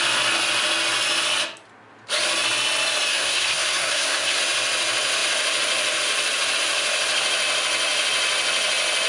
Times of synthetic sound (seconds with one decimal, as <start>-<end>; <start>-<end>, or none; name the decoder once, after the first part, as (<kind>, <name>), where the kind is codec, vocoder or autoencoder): 3.1-4.4 (codec, SNAC)